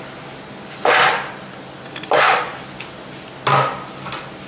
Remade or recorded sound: recorded